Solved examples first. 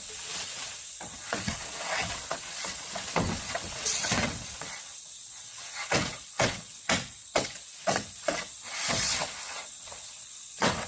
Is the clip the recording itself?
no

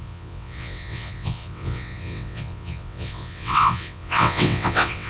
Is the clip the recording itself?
no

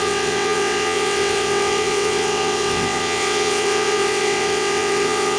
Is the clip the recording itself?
no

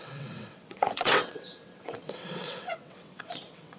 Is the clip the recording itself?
no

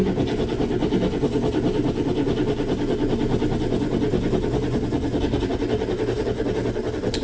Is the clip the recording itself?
yes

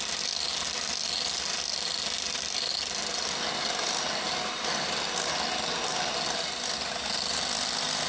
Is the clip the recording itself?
yes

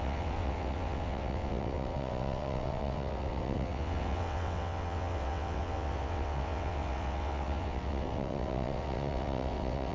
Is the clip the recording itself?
no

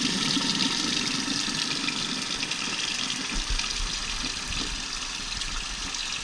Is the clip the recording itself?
yes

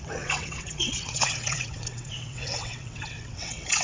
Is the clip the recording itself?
no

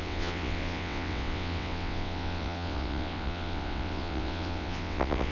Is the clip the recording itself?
no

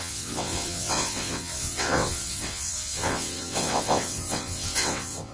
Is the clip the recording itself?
no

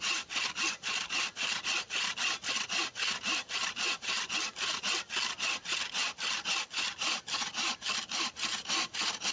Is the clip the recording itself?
yes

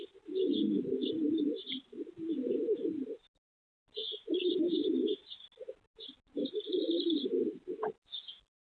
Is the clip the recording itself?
yes